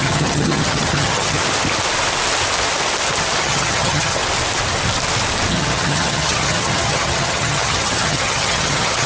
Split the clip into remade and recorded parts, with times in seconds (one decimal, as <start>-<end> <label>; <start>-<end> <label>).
0.0-1.4 remade; 1.4-3.4 recorded; 3.4-4.2 remade; 4.2-5.5 recorded; 5.5-9.1 remade